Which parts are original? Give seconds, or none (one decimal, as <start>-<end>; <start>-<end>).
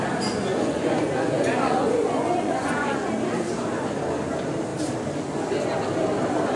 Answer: 0.0-0.5; 3.1-6.6